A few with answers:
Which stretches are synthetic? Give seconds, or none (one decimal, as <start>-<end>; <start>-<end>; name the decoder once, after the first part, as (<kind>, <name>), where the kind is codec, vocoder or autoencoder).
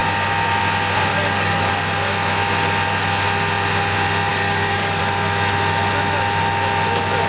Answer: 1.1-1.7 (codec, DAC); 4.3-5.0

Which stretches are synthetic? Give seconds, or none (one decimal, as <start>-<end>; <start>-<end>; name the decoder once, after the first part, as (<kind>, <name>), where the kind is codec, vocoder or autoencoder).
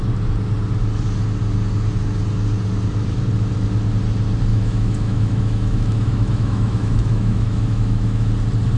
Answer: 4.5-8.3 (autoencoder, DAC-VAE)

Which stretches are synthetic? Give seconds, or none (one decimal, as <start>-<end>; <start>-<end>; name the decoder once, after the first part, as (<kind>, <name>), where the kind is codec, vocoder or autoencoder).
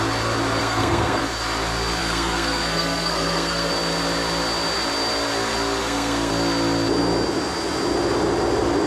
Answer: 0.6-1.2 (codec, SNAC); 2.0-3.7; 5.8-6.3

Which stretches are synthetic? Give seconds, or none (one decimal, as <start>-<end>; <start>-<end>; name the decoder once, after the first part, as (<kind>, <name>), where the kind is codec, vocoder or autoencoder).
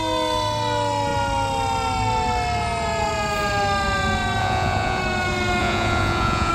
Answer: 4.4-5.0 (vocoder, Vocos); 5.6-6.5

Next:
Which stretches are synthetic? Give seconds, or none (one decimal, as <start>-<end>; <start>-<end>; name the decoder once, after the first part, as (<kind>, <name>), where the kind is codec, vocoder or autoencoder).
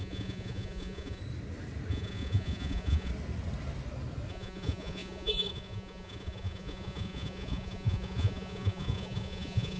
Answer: 0.0-1.2 (vocoder, Vocos); 1.9-3.1; 4.3-9.8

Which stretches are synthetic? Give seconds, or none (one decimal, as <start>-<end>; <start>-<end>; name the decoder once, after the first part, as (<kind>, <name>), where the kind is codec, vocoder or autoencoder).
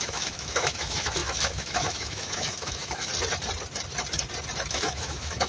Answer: 0.0-3.1 (autoencoder, DAC-VAE); 4.7-5.5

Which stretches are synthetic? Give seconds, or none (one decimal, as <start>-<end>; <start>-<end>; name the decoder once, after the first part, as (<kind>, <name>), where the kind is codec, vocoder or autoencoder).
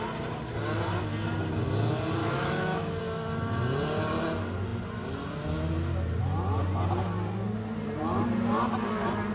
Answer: 2.2-3.0 (autoencoder, DAC-VAE)